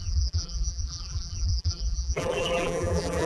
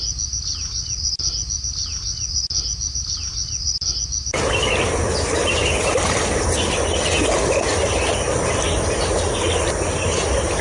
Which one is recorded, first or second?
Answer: second